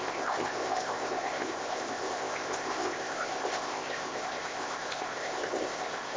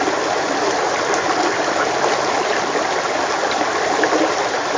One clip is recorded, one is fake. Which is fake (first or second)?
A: first